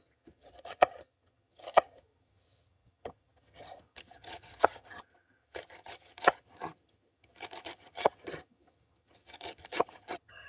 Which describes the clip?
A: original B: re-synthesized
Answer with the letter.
B